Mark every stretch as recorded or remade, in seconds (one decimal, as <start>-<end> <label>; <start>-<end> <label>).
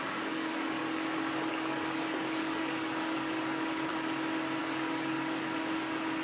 0.0-0.8 remade; 0.8-1.5 recorded; 1.5-3.9 remade; 3.9-4.6 recorded; 4.6-6.2 remade